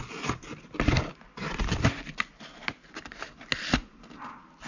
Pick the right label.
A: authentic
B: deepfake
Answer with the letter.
A